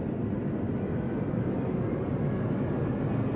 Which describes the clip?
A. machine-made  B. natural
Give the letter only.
B